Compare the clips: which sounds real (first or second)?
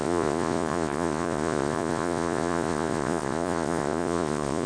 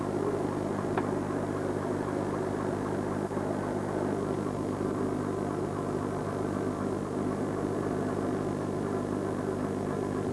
second